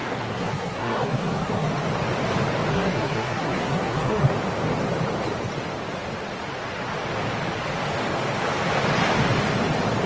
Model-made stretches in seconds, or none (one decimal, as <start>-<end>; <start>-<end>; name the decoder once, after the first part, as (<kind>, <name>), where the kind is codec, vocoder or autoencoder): 0.0-1.7 (codec, SNAC); 2.7-4.3